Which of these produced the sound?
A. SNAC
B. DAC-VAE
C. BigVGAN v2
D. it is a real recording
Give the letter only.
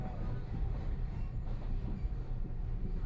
C